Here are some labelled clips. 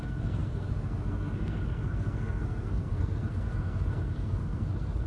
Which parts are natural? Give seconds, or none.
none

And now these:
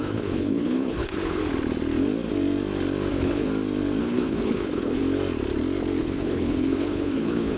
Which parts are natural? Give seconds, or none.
1.4-3.1; 3.5-4.0; 5.0-6.0

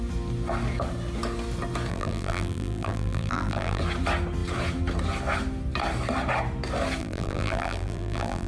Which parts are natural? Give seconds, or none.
0.0-1.9; 3.8-7.0

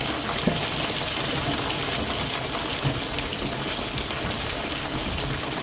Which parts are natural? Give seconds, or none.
0.0-5.6

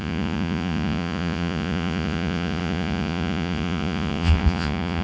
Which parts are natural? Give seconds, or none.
none

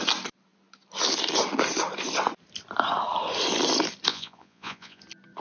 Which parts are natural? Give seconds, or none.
0.0-4.1; 5.0-5.4

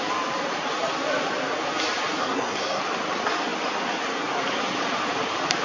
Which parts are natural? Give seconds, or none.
0.0-2.2; 2.8-5.6

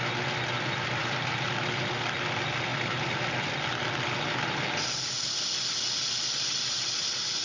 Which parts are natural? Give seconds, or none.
0.0-7.4